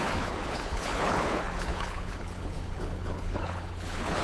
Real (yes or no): no